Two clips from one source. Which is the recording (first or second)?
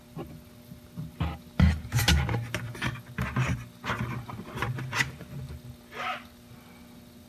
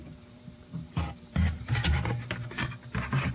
first